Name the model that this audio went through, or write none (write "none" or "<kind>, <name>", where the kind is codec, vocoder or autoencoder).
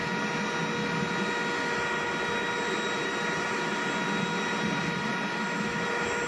none